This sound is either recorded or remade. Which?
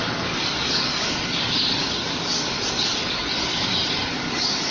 remade